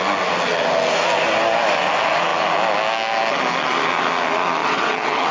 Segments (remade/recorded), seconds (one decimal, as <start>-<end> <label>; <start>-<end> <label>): 0.0-4.6 recorded; 4.6-5.3 remade